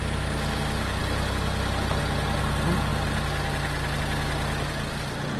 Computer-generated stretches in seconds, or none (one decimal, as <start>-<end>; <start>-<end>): none